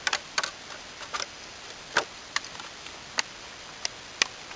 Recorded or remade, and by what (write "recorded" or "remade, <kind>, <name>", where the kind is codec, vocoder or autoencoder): recorded